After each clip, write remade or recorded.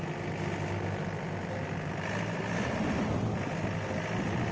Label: recorded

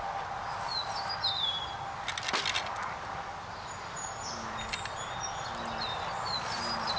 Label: recorded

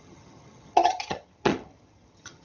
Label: remade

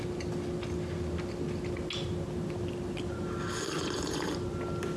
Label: recorded